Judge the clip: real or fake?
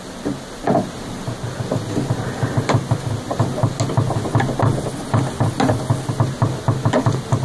real